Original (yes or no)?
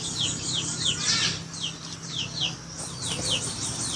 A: yes